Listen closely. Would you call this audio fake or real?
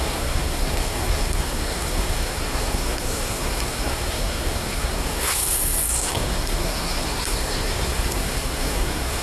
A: fake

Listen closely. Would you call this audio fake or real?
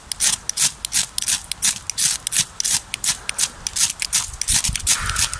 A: real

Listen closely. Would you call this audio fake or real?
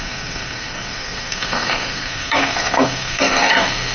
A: fake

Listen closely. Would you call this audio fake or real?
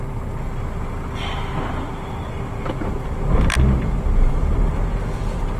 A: real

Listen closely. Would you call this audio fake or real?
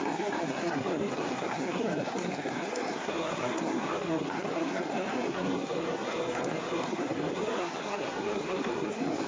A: fake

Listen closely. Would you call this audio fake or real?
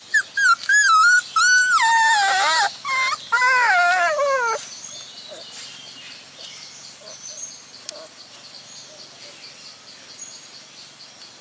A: real